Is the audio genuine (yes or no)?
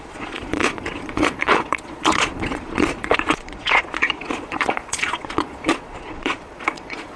no